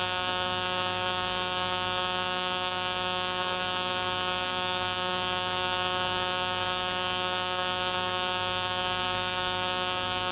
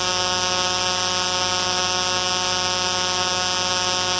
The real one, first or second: second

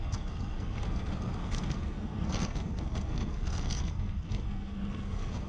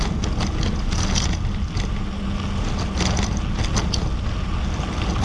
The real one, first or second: second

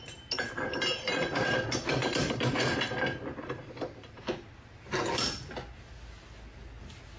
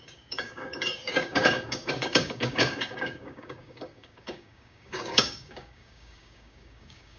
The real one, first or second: first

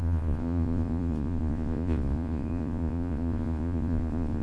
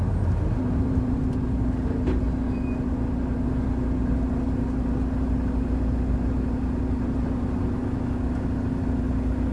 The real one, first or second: second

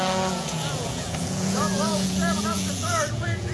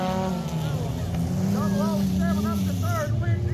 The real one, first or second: second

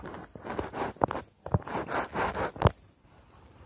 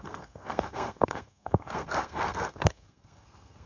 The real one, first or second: first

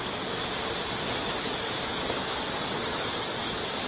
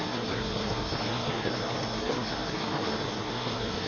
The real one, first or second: first